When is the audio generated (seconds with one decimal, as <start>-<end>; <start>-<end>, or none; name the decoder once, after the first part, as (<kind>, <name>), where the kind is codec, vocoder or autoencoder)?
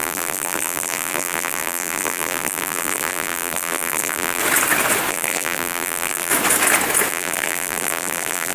0.0-4.4 (vocoder, BigVGAN v2); 5.1-6.3; 7.1-8.5